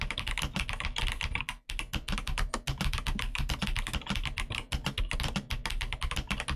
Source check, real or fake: real